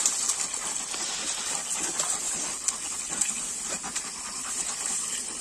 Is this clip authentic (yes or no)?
yes